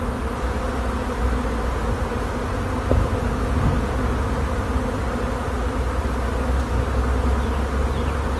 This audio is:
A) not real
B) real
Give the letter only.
B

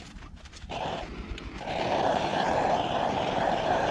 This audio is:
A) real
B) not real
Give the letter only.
B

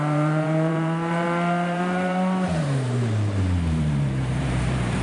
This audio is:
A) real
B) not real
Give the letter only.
B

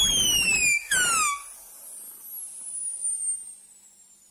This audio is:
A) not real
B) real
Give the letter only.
B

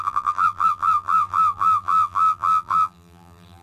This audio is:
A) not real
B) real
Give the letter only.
A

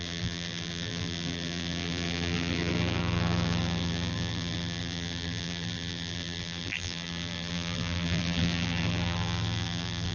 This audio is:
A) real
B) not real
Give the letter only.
B